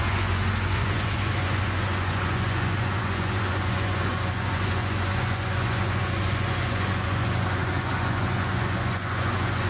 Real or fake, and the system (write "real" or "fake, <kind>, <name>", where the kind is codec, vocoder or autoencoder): fake, vocoder, Vocos